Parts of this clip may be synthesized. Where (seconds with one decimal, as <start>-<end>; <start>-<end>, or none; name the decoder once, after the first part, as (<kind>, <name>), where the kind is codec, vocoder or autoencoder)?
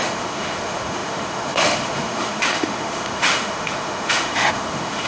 0.0-5.1 (autoencoder, DAC-VAE)